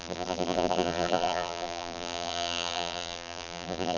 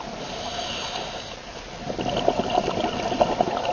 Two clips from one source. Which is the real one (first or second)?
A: second